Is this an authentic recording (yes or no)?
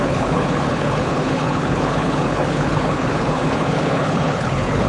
no